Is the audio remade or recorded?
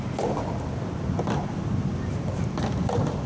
recorded